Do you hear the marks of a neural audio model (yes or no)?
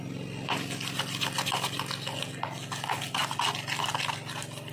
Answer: no